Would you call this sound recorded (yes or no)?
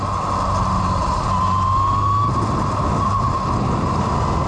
yes